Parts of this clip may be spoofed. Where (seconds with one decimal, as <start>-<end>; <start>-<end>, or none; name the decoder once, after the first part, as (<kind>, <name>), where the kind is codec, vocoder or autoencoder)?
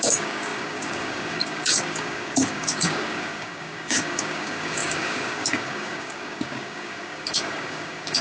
0.0-8.2 (codec, DAC)